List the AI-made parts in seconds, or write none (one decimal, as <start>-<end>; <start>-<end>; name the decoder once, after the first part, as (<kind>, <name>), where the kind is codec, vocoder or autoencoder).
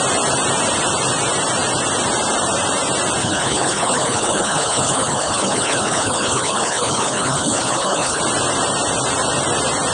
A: 3.2-8.2 (codec, HILCodec)